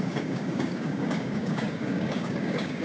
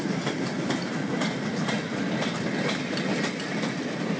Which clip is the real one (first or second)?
second